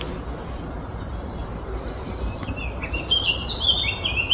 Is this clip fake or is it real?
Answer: real